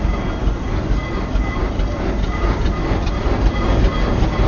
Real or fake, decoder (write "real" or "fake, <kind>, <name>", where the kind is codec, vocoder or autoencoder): real